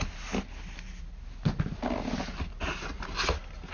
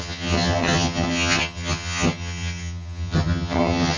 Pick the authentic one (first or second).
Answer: first